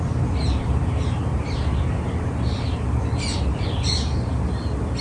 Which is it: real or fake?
fake